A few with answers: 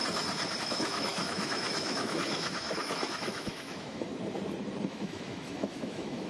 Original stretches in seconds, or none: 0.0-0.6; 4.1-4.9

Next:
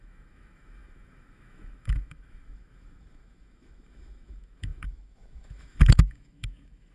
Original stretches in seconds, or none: none

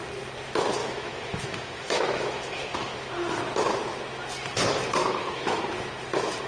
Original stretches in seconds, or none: 0.0-0.8; 3.1-5.0; 5.6-6.5